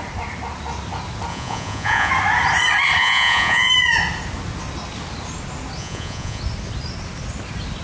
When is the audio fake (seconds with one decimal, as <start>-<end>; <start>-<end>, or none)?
1.3-2.1; 3.0-3.7; 5.8-6.4